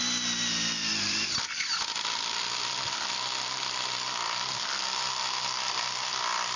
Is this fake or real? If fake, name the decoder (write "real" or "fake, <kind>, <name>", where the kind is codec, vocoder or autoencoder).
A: real